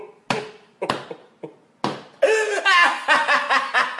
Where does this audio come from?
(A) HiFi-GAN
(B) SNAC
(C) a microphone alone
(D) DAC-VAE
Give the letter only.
C